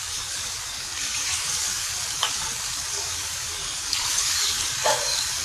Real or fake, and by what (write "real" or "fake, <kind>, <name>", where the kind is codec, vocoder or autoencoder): fake, codec, DAC